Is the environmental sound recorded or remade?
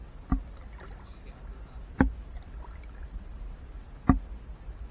recorded